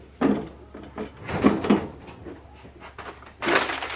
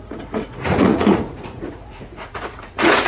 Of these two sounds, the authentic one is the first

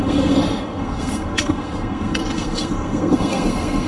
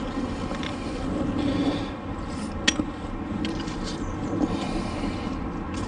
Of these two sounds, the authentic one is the second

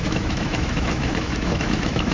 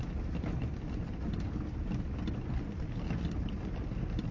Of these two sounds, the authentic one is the second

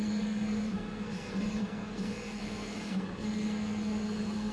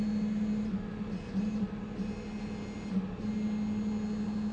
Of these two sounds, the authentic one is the second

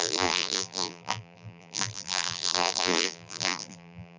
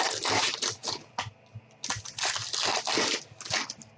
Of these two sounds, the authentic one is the second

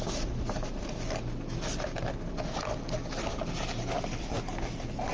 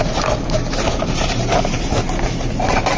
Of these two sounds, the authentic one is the first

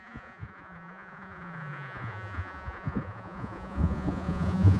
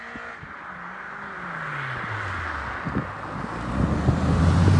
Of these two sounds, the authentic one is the second